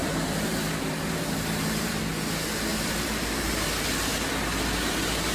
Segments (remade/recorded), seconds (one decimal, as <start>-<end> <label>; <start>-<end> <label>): 0.0-2.0 remade; 2.0-2.7 recorded; 2.7-3.5 remade; 3.5-5.3 recorded